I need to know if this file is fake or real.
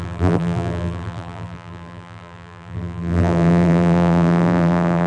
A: fake